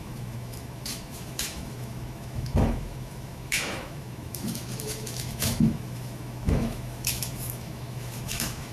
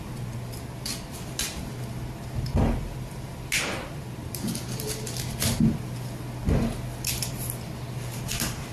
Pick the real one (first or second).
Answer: second